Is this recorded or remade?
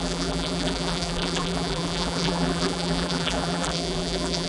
remade